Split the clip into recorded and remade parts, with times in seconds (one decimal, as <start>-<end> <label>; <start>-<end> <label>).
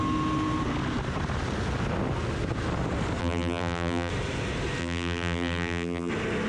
0.0-3.2 recorded; 3.2-4.1 remade; 4.1-4.8 recorded; 4.8-6.1 remade; 6.1-6.5 recorded